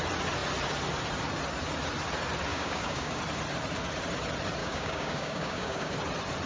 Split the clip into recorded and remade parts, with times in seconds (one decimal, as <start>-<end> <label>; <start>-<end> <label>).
0.0-2.5 recorded; 2.5-3.2 remade; 3.2-4.6 recorded; 4.6-5.9 remade; 5.9-6.5 recorded